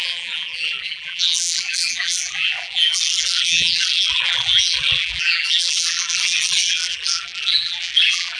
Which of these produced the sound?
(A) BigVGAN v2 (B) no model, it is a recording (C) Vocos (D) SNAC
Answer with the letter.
A